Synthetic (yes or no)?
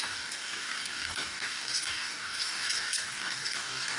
yes